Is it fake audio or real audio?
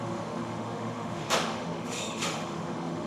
fake